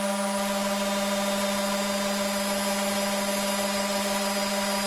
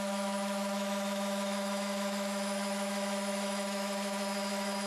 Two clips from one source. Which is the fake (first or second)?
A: second